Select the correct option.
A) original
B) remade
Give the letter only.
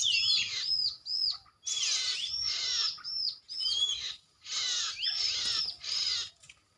A